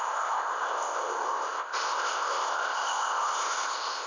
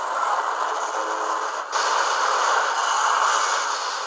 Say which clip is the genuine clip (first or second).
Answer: second